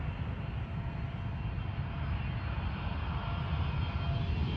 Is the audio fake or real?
real